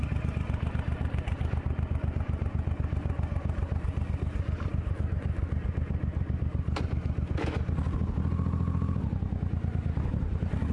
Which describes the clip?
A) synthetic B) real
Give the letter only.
B